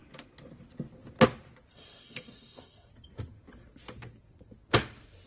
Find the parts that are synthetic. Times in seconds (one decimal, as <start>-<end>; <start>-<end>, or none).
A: 1.7-2.9